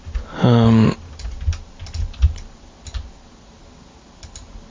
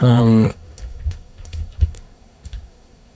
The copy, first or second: second